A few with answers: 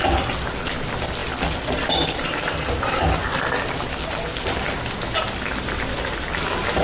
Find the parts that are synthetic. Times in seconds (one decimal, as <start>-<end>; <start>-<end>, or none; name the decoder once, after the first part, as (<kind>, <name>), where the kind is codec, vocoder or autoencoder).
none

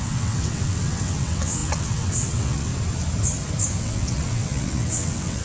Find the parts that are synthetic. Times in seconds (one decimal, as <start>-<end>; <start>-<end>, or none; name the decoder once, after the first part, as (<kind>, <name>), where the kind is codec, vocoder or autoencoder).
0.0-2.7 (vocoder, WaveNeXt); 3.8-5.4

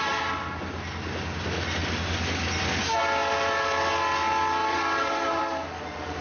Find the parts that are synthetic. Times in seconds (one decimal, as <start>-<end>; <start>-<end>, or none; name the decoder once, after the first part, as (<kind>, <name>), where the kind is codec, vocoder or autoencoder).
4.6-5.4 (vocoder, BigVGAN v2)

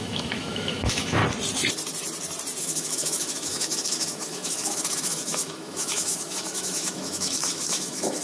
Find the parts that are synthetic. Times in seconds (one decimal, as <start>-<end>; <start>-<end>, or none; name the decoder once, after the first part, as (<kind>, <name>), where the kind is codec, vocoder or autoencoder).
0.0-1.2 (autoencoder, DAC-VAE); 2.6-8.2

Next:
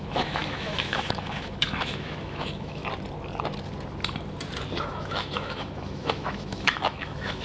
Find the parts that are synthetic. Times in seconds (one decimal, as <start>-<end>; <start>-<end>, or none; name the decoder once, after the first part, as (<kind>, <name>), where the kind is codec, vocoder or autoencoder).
0.0-2.8 (autoencoder, DAC-VAE); 4.8-7.4

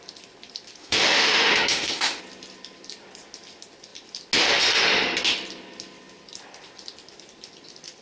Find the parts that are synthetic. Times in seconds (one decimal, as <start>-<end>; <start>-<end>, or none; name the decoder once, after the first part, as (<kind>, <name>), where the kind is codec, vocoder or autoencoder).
0.8-2.2 (autoencoder, DAC-VAE)

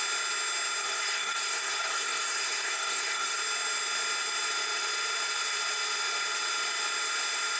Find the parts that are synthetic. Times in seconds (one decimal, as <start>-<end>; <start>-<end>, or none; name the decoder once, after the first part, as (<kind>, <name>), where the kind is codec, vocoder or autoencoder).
0.8-3.4 (codec, SNAC)